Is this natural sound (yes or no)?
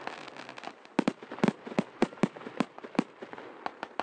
yes